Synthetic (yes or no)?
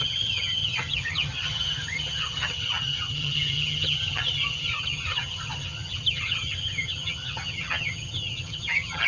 yes